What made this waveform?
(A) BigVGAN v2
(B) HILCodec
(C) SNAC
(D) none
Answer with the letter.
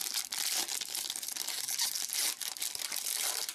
A